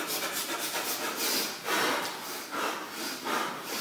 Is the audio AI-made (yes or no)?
no